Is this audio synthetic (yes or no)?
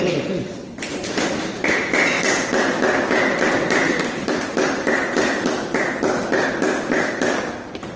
no